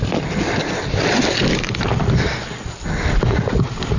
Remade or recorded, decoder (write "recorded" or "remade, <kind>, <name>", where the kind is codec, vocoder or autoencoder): recorded